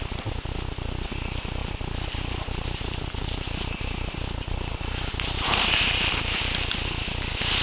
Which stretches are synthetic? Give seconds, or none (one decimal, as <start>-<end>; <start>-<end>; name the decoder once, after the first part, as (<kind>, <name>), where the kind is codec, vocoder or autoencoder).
1.6-6.2 (vocoder, BigVGAN v2)